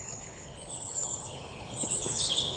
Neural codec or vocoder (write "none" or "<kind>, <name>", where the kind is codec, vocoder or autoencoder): codec, HILCodec